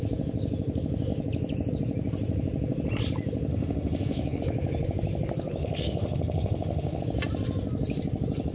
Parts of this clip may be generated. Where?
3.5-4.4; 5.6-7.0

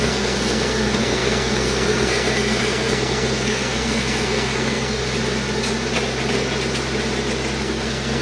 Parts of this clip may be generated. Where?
0.0-5.0; 7.6-8.2

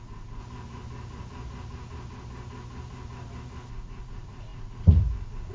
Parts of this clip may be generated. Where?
0.0-0.4; 3.7-5.5

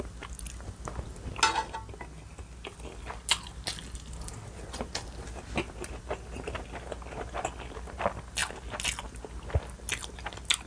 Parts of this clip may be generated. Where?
none

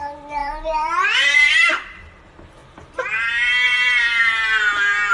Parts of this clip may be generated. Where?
0.4-2.0; 2.6-5.1

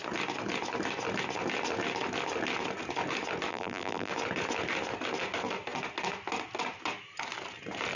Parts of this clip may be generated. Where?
3.5-4.1

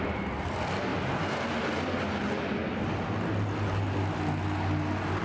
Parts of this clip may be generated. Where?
none